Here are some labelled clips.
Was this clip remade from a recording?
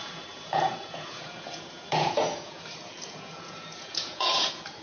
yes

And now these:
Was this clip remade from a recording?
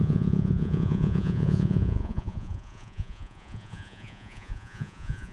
yes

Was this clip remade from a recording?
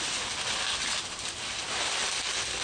no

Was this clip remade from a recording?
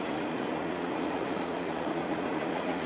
yes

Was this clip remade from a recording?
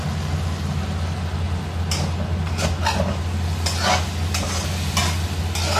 no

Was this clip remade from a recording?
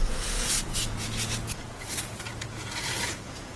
yes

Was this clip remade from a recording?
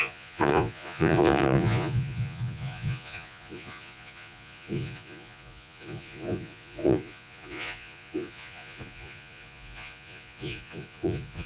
yes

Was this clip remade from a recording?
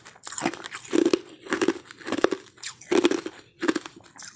no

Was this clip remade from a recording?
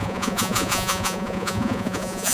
yes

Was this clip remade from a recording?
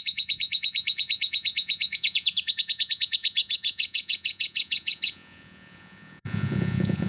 yes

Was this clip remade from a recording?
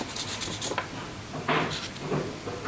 no